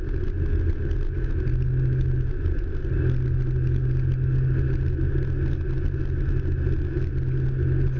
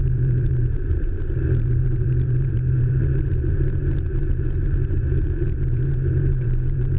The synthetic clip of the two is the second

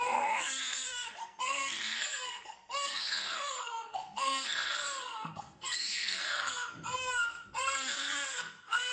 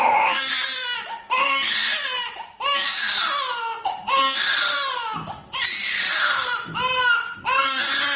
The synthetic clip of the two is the first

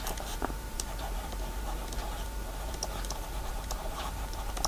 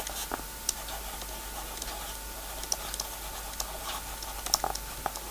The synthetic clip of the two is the first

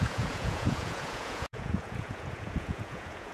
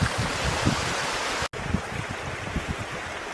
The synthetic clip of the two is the first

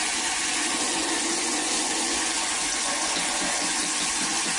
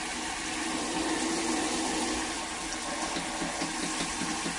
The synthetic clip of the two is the first